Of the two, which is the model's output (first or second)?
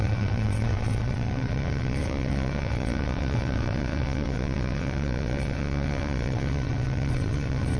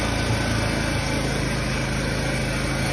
first